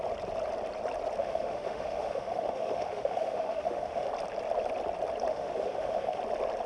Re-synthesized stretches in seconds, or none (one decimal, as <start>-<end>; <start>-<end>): 1.2-4.1; 5.3-6.2